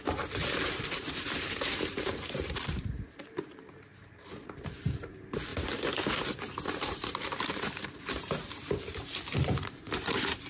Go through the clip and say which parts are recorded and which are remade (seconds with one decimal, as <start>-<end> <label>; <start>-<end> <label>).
0.0-5.5 remade; 5.5-6.9 recorded; 6.9-10.5 remade